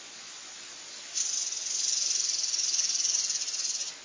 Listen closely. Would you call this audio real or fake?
real